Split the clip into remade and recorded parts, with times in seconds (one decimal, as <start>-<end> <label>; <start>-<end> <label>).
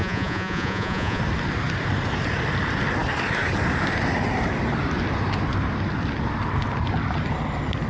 0.0-1.2 remade; 1.2-7.9 recorded